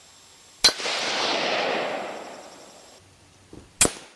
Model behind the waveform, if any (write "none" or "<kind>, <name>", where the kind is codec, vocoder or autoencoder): none